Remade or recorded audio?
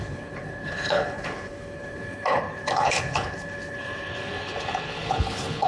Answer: remade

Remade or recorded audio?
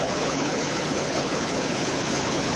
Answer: remade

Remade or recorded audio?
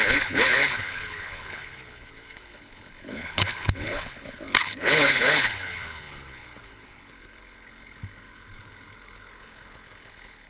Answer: remade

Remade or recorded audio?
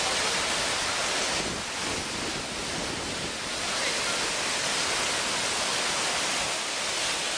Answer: recorded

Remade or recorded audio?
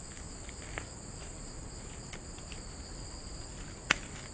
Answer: recorded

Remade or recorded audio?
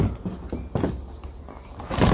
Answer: recorded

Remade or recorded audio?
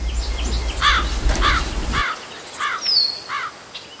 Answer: recorded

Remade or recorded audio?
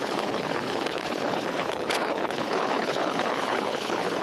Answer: remade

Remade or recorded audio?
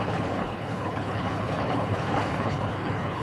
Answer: remade